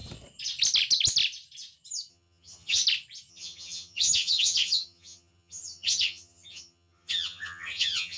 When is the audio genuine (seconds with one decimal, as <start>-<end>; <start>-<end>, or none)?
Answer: 0.0-2.1; 2.8-3.3